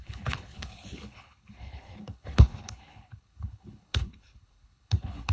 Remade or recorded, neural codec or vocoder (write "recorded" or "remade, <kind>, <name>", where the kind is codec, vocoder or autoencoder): remade, codec, HILCodec